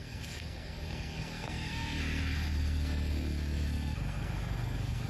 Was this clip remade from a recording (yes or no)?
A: yes